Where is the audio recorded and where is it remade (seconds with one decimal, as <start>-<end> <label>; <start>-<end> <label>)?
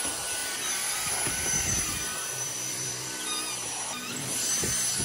0.0-0.4 recorded; 0.4-3.4 remade; 3.4-5.0 recorded